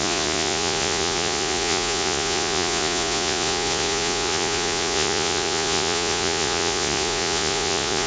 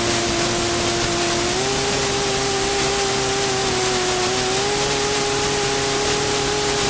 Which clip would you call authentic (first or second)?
second